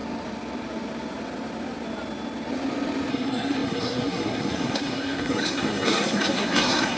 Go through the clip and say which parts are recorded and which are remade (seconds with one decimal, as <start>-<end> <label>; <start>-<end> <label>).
0.0-3.1 recorded; 3.1-7.0 remade